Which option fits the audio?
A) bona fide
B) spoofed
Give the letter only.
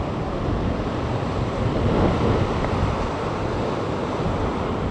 A